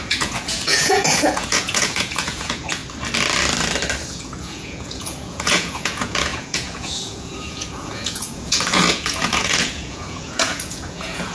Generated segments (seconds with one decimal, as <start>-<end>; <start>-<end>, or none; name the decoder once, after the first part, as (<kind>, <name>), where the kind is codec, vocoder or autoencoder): 0.0-2.8 (vocoder, Vocos); 4.1-11.3